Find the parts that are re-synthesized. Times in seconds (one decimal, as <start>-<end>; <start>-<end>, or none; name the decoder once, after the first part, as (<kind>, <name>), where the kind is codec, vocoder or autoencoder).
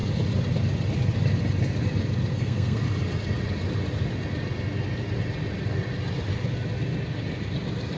2.3-2.8 (codec, SNAC)